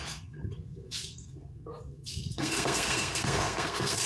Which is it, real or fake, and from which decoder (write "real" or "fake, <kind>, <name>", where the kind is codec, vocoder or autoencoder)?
fake, codec, SNAC